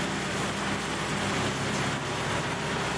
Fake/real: real